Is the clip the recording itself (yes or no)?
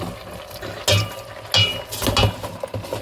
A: yes